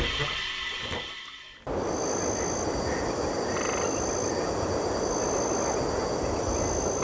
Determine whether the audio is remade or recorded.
recorded